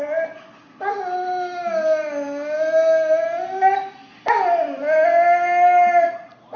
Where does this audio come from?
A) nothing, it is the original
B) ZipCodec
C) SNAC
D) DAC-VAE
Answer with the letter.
A